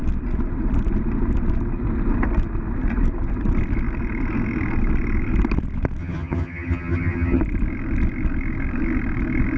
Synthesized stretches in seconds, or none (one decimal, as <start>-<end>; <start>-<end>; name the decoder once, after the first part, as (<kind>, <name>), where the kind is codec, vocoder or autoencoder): 6.0-7.4 (vocoder, HiFi-GAN)